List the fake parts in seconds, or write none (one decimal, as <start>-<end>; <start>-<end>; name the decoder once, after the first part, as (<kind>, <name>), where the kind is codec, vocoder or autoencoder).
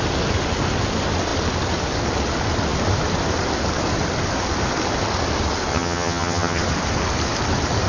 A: 5.7-6.6 (vocoder, HiFi-GAN)